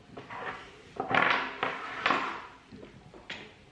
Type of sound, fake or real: real